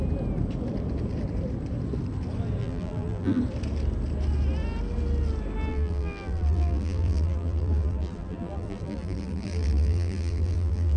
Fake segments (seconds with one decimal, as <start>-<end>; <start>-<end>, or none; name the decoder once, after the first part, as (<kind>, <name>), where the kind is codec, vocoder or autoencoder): 2.6-3.4 (vocoder, BigVGAN v2); 5.7-11.0